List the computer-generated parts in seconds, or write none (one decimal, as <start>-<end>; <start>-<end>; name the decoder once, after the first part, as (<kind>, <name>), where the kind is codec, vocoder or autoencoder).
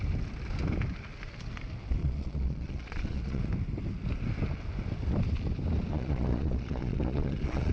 2.0-3.4 (vocoder, Vocos); 5.9-7.7